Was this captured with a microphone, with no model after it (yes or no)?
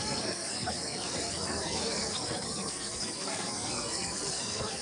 no